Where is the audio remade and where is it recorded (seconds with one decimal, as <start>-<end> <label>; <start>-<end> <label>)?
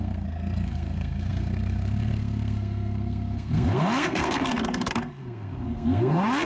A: 0.0-6.5 remade